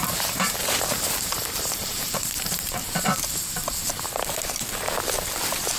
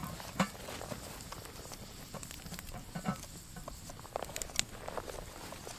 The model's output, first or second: first